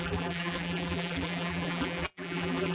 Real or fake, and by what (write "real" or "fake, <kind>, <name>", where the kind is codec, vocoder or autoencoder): fake, vocoder, BigVGAN v2